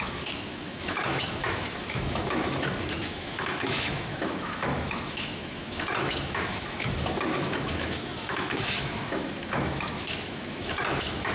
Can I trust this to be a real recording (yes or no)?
no